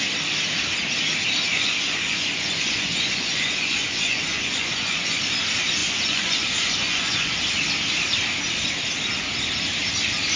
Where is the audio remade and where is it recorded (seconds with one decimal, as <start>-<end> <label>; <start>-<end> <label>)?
0.0-1.5 recorded; 1.5-5.2 remade; 5.2-5.8 recorded; 5.8-7.3 remade; 7.3-10.4 recorded

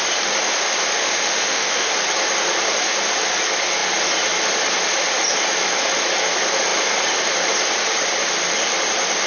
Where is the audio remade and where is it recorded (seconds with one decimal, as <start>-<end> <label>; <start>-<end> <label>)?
0.0-1.0 recorded; 1.0-1.9 remade; 1.9-9.3 recorded

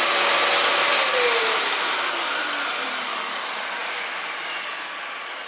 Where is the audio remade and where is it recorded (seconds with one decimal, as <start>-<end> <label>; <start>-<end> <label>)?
0.0-5.5 recorded

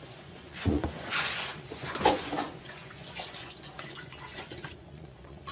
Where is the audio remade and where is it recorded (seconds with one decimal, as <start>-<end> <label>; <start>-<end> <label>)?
0.0-5.5 remade

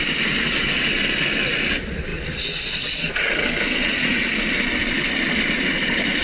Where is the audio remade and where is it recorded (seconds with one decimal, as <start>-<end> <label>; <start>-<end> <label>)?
0.0-6.2 recorded

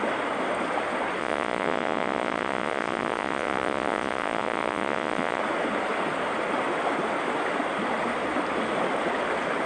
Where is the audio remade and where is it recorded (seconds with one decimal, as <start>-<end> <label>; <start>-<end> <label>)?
0.0-1.2 recorded; 1.2-5.4 remade; 5.4-9.7 recorded